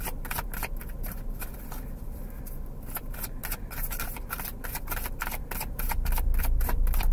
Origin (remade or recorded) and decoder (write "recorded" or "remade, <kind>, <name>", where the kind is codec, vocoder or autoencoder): remade, vocoder, BigVGAN v2